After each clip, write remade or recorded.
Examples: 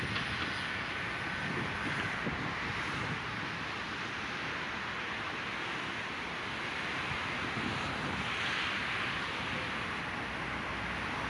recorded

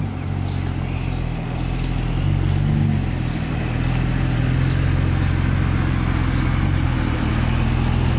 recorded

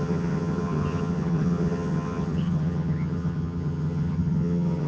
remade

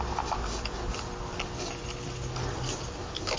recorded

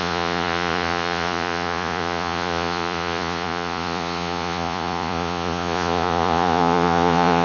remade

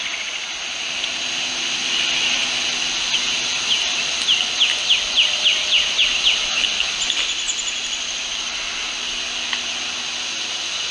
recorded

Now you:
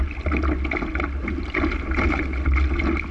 recorded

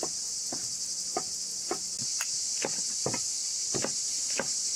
recorded